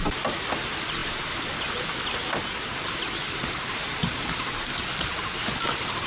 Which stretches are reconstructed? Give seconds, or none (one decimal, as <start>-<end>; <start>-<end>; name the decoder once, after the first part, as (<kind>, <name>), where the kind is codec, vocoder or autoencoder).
none